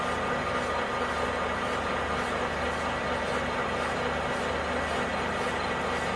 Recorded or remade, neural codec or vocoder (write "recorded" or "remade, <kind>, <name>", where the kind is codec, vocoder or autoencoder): recorded